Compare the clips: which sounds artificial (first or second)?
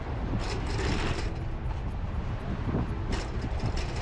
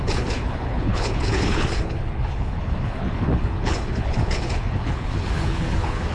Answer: second